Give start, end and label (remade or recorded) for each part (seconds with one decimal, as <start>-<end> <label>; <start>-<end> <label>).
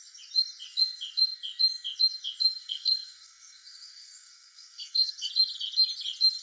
0.0-2.6 recorded; 2.6-5.3 remade; 5.3-6.4 recorded